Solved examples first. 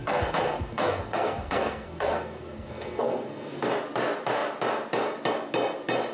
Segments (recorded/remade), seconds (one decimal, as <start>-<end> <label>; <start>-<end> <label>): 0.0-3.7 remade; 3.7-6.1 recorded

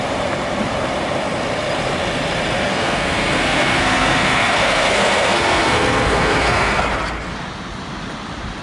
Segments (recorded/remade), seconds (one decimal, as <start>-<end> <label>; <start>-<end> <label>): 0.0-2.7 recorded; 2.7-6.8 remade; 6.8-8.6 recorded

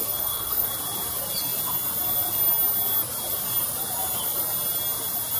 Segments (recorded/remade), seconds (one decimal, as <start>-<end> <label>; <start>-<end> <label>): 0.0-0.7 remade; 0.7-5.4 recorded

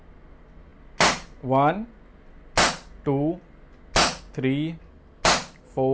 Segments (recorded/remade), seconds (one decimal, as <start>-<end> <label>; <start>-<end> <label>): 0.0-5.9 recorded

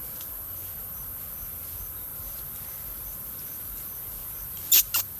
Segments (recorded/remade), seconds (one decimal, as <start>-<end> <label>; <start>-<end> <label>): 0.0-5.2 recorded

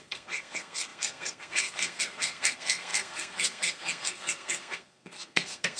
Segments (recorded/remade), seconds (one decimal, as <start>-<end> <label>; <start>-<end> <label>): 0.0-5.8 remade

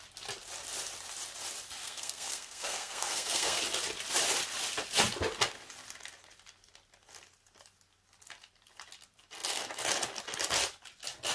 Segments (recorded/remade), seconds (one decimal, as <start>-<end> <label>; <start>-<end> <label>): 0.0-1.8 recorded; 1.8-3.6 remade; 3.6-11.3 recorded